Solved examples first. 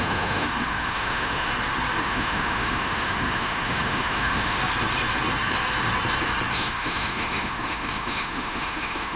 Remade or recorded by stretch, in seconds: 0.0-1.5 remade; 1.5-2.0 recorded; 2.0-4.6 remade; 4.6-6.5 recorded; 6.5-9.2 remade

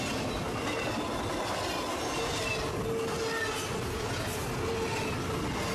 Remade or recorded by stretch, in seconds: 0.0-5.7 recorded